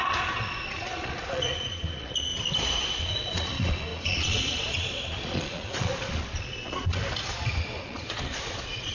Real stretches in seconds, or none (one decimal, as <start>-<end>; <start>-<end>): 2.3-3.0; 7.0-7.6